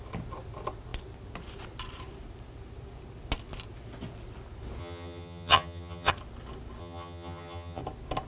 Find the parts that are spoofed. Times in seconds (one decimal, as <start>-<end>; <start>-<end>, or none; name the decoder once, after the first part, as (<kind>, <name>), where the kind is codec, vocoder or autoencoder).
4.8-6.1 (vocoder, HiFi-GAN); 6.8-7.8